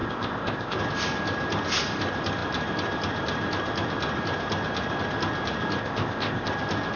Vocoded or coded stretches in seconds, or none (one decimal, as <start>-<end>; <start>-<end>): 0.0-0.8; 5.8-6.5